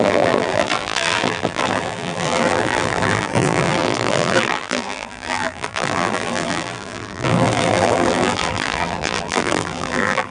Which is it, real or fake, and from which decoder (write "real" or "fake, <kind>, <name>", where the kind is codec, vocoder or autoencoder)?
fake, vocoder, BigVGAN v2